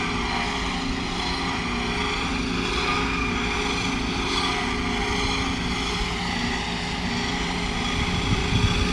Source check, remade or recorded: recorded